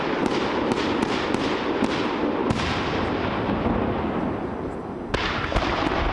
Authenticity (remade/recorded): recorded